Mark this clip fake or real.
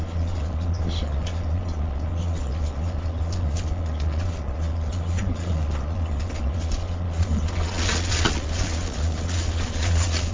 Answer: fake